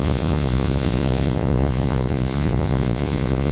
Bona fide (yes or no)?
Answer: no